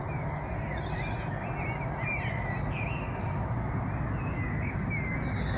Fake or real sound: real